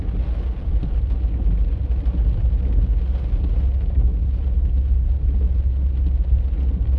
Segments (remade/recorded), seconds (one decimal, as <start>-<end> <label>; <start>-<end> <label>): 0.0-7.0 recorded